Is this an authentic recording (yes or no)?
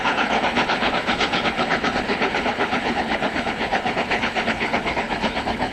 no